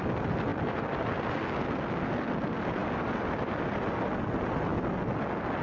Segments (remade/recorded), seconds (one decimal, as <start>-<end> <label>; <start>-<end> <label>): 0.0-0.5 recorded; 0.5-1.1 remade; 1.1-2.8 recorded; 2.8-3.9 remade; 3.9-5.6 recorded